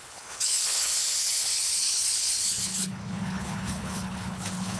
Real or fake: fake